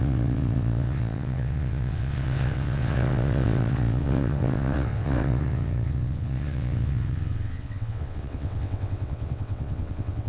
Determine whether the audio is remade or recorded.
remade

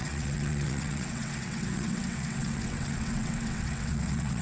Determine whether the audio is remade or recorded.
remade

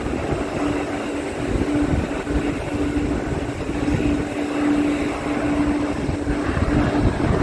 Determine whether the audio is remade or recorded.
recorded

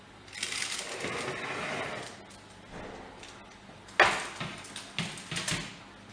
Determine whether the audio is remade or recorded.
recorded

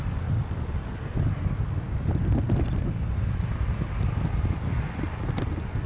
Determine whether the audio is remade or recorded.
recorded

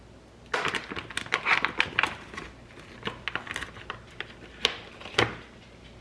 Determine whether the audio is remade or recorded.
recorded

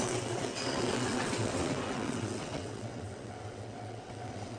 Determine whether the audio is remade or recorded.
remade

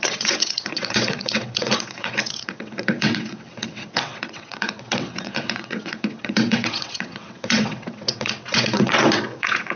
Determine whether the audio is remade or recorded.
remade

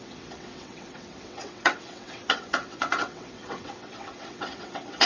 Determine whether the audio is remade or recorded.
remade